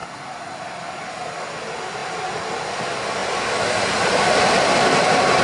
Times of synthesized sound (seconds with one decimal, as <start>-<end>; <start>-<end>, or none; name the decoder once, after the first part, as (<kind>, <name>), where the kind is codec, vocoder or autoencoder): 2.0-2.6 (vocoder, BigVGAN v2); 3.2-5.4